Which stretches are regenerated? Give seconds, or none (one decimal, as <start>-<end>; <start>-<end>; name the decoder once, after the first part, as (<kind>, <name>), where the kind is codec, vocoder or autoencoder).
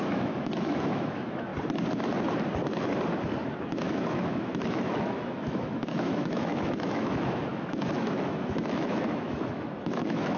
0.0-1.5 (autoencoder, DAC-VAE); 3.6-10.4